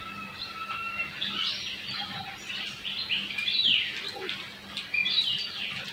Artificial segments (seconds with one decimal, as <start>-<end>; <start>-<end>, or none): 0.6-4.1; 5.0-5.9